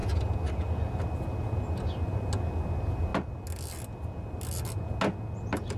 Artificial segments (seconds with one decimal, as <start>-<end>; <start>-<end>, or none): none